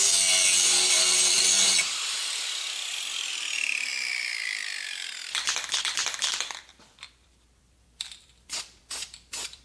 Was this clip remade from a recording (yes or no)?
yes